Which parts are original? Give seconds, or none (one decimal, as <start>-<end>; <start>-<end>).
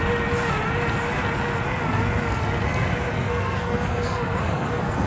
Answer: 0.0-3.1